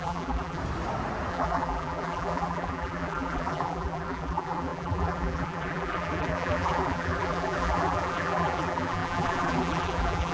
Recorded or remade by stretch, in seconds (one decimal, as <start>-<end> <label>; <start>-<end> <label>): 0.0-0.6 remade; 0.6-1.3 recorded; 1.3-10.3 remade